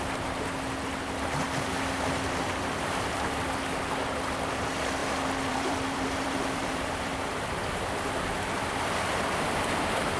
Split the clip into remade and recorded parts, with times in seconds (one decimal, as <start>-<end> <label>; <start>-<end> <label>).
0.0-5.0 recorded; 5.0-7.0 remade; 7.0-10.2 recorded